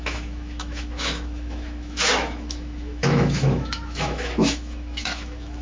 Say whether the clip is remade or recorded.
remade